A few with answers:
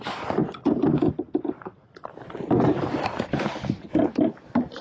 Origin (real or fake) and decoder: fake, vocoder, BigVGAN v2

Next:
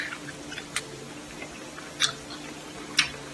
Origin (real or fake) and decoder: real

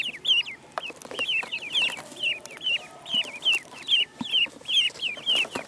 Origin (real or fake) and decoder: fake, vocoder, BigVGAN v2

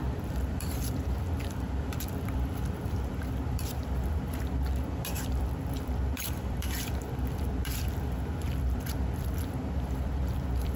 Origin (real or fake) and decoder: fake, vocoder, BigVGAN v2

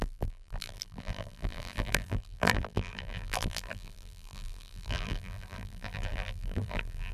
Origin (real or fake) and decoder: fake, vocoder, BigVGAN v2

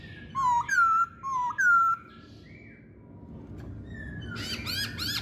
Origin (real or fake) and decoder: real